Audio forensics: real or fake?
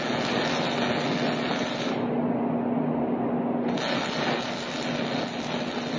real